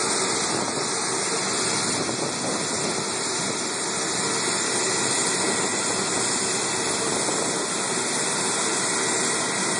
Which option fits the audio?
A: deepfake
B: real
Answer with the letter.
B